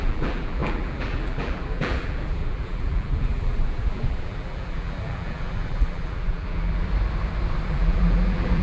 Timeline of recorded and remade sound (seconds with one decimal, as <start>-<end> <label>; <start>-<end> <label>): 0.0-6.8 remade; 6.8-7.7 recorded; 7.7-8.6 remade